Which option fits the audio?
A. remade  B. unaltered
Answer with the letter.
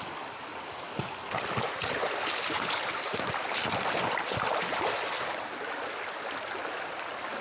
B